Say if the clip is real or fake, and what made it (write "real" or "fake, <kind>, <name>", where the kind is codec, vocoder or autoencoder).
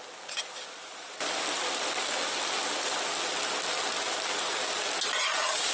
real